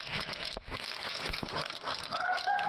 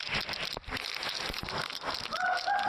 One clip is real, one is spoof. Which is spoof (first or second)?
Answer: first